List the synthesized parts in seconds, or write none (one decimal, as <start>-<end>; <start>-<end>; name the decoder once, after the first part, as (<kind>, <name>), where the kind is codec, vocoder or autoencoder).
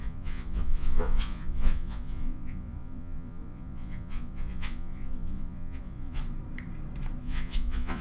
0.0-6.2 (vocoder, Vocos); 7.2-8.0